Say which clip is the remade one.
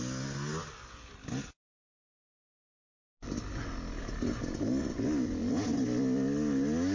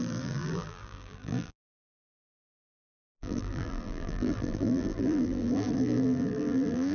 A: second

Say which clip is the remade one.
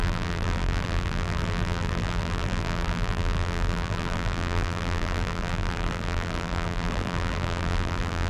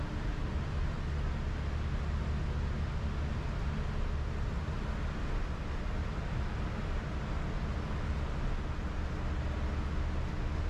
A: first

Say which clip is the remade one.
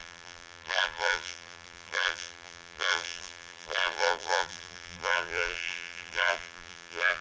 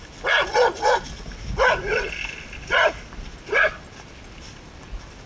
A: first